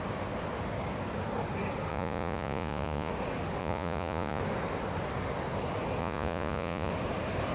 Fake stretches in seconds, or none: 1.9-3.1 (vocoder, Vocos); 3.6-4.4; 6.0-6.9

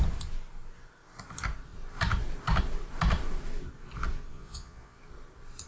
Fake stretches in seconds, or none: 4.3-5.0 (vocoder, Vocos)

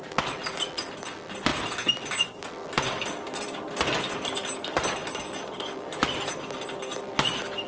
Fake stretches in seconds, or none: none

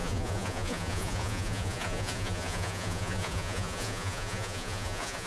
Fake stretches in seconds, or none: 0.0-5.3 (vocoder, Vocos)